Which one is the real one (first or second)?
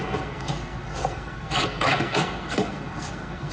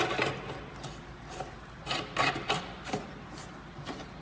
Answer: second